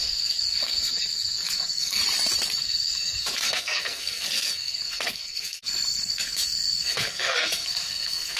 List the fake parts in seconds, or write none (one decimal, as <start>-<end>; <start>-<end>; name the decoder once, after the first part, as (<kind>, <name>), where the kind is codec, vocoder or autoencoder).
0.0-2.0 (codec, SNAC); 2.6-8.4